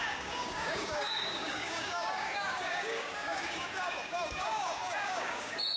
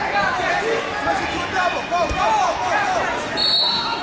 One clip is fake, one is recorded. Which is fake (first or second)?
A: first